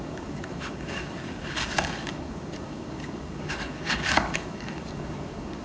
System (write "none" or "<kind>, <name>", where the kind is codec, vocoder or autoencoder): codec, DAC